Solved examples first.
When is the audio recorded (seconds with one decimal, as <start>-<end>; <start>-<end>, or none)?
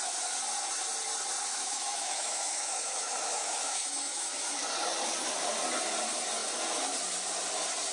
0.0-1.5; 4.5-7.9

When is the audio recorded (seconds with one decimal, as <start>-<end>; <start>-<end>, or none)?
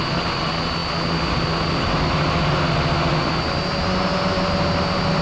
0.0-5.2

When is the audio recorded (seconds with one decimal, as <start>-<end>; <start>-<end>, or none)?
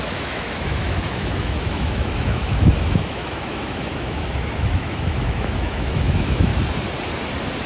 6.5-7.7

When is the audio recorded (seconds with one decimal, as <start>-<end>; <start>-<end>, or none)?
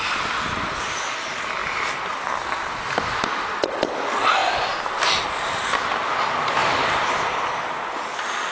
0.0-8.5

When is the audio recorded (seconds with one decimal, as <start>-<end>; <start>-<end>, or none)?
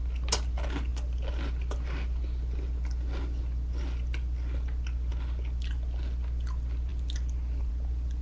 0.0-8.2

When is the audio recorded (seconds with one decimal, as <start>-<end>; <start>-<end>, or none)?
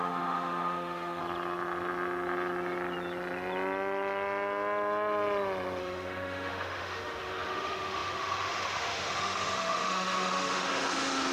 1.2-5.8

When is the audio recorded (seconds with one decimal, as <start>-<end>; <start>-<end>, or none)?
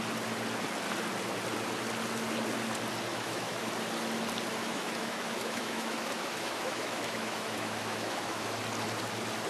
0.0-3.1; 3.7-4.6; 8.6-9.5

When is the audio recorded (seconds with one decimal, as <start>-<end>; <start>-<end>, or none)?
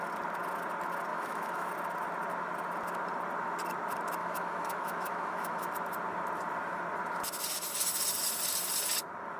0.0-1.1; 1.7-4.2; 5.7-9.4